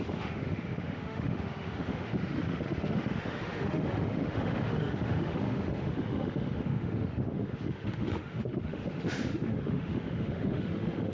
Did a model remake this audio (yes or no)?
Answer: yes